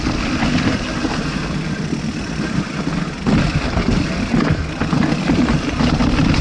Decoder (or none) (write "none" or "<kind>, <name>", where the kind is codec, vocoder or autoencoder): none